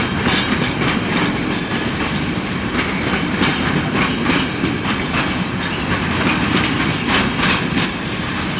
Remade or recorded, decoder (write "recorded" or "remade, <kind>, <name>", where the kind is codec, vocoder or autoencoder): recorded